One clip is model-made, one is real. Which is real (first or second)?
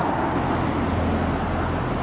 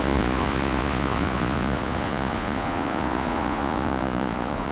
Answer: first